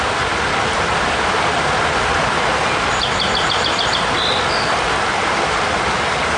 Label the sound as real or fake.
real